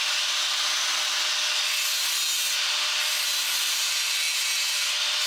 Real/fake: real